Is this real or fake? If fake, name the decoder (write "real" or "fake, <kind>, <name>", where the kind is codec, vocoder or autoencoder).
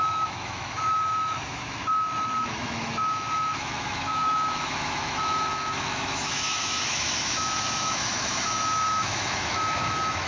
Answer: fake, autoencoder, DAC-VAE